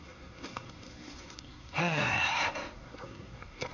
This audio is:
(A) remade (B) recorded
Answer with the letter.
A